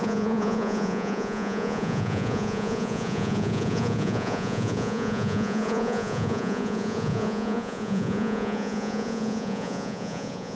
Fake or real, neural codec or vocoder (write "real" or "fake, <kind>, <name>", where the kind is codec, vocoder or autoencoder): fake, vocoder, Vocos